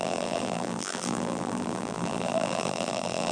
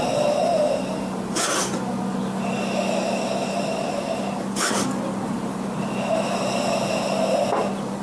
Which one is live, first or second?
second